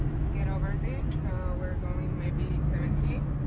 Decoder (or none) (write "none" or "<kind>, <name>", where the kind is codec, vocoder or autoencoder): none